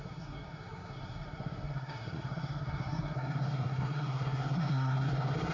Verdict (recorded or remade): remade